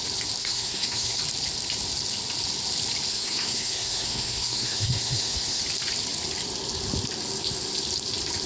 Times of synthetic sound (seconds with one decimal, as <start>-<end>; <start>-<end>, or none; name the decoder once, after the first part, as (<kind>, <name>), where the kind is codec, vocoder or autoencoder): 0.4-1.2 (codec, SNAC); 3.1-5.6